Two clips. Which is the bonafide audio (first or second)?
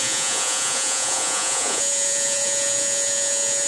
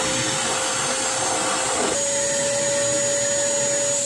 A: second